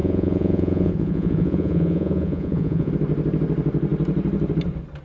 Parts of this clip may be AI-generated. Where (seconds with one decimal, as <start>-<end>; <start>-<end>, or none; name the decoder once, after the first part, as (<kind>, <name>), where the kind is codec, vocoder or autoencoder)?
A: 0.0-2.9 (vocoder, Vocos)